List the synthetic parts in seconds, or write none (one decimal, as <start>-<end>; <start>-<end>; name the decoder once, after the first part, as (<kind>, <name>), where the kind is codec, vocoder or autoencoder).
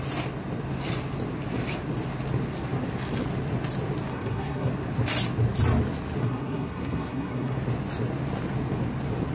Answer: 4.1-4.7 (codec, SNAC); 6.2-7.6